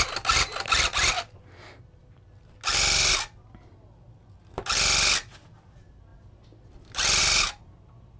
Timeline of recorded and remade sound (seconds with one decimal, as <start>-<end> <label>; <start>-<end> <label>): 0.0-8.2 recorded